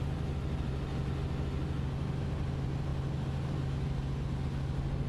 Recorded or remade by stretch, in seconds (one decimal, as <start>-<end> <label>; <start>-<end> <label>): 0.0-5.1 recorded